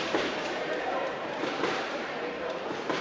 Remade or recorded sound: remade